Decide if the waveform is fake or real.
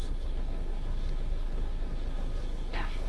fake